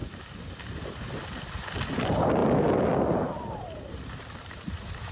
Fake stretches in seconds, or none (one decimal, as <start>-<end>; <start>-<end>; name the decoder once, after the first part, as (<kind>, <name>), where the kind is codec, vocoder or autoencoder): 1.9-2.4 (vocoder, BigVGAN v2); 3.9-5.1